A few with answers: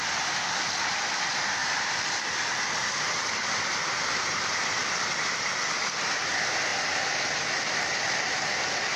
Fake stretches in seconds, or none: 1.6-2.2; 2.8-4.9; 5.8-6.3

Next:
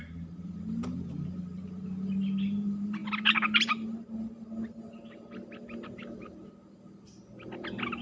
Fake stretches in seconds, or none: none

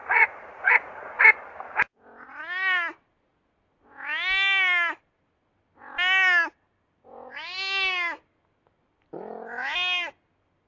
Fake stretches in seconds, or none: 0.0-1.2

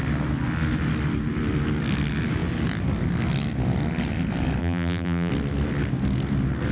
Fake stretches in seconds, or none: 4.6-5.3

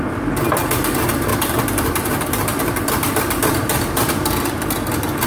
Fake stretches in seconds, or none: 1.3-4.5

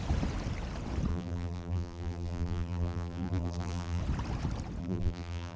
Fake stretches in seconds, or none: 1.1-4.0; 4.8-5.6

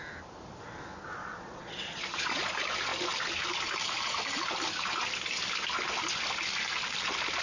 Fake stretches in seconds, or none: 1.2-2.5